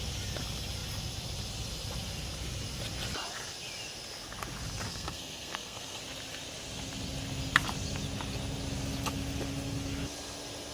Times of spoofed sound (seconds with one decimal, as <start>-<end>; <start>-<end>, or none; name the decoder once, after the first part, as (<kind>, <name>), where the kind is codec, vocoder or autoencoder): 4.9-6.0 (codec, SNAC)